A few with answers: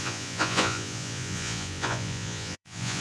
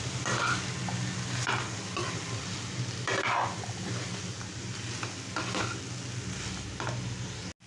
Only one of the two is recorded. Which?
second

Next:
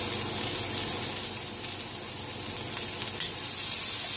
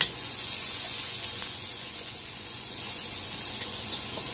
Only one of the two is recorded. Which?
first